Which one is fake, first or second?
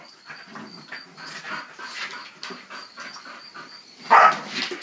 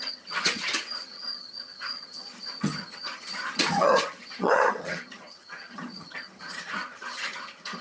second